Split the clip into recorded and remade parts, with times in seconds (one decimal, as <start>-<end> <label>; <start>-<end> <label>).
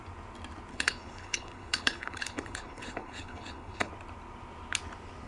0.0-0.7 recorded; 0.7-3.9 remade; 3.9-5.3 recorded